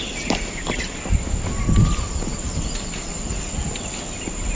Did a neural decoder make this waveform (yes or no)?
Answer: no